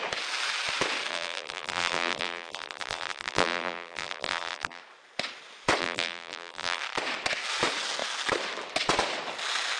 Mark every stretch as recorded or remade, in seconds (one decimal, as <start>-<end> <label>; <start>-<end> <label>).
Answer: 0.0-1.1 recorded; 1.1-4.8 remade; 4.8-5.8 recorded; 5.8-6.8 remade; 6.8-9.8 recorded